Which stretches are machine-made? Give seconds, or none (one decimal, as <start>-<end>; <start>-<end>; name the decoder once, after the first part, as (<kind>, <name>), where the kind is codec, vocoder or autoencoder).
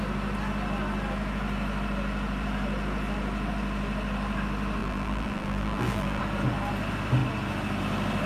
4.8-6.2 (vocoder, BigVGAN v2)